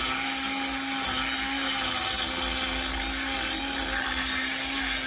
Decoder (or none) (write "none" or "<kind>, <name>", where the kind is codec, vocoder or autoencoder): none